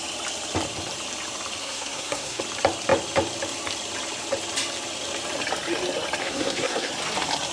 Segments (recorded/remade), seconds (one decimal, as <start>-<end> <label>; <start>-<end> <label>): 0.0-1.6 recorded; 1.6-2.4 remade; 2.4-6.2 recorded; 6.2-6.9 remade; 6.9-7.5 recorded